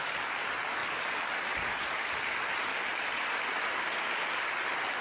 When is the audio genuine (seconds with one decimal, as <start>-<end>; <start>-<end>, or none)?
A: 0.0-0.8; 1.7-2.7; 3.4-5.0